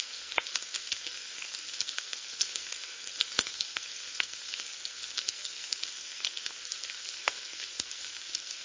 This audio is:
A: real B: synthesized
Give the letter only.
B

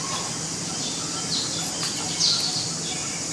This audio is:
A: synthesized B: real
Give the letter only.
B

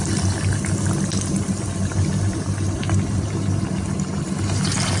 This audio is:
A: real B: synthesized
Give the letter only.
A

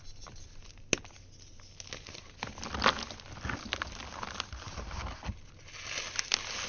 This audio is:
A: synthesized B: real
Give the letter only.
B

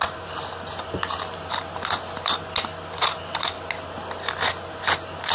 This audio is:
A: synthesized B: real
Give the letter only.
B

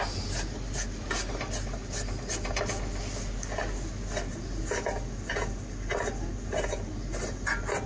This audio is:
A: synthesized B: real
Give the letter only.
B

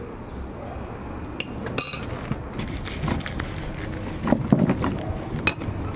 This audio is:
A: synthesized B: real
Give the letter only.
B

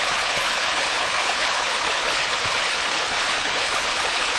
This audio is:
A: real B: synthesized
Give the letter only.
B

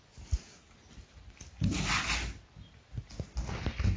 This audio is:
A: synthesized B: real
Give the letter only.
B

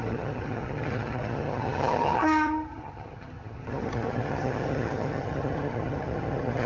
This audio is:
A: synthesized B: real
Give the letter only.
A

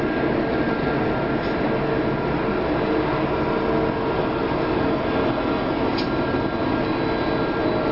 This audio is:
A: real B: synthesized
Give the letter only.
A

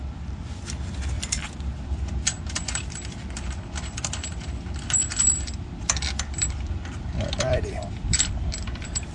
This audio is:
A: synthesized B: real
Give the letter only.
A